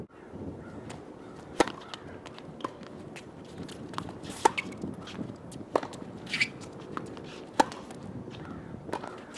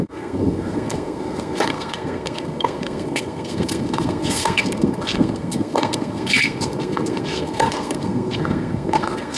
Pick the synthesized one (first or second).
second